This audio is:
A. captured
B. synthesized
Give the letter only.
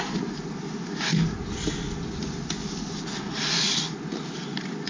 A